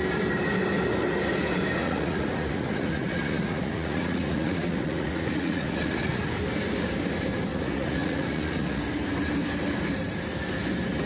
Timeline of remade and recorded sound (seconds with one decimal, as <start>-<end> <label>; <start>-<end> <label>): 0.0-1.8 recorded; 1.8-6.3 remade; 6.3-7.5 recorded; 7.5-8.8 remade; 8.8-11.1 recorded